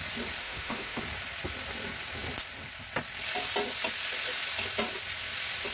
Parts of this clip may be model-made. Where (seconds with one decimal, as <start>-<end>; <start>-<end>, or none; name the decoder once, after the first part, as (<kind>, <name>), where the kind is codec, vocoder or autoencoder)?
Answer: 0.4-1.0 (autoencoder, DAC-VAE)